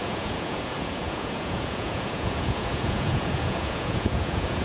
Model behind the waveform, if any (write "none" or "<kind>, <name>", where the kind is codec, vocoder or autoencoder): vocoder, Vocos